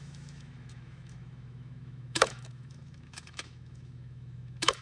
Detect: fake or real fake